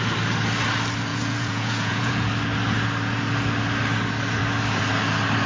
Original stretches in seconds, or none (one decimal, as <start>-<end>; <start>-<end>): 0.0-1.1; 2.3-5.5